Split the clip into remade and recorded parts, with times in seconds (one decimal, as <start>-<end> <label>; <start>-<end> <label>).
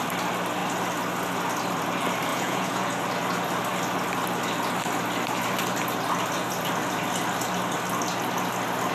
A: 0.0-2.3 recorded; 2.3-3.0 remade; 3.0-8.9 recorded